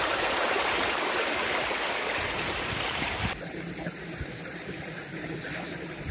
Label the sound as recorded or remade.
remade